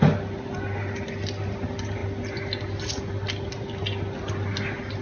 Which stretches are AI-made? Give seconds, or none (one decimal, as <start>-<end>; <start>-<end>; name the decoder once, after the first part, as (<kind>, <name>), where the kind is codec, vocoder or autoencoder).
none